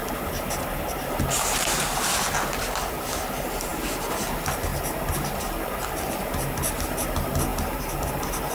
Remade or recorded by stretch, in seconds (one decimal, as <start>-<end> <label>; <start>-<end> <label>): 0.0-8.5 recorded